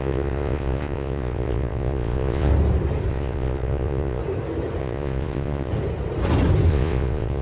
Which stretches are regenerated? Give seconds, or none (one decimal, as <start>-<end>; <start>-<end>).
0.0-2.5; 3.1-4.2; 4.8-5.7; 6.7-7.4